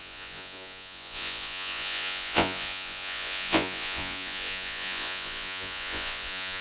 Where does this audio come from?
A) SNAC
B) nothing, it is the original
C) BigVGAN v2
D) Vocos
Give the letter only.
D